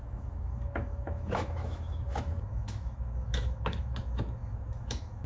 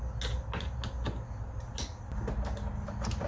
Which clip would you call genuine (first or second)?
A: second